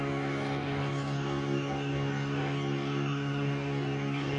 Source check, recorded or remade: remade